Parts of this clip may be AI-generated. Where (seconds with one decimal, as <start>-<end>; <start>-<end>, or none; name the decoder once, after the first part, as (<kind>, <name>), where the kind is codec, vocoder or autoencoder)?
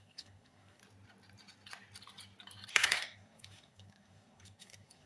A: 0.0-0.8 (codec, SNAC); 2.7-5.1